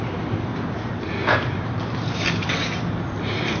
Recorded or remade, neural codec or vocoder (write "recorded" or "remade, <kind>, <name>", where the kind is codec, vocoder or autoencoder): recorded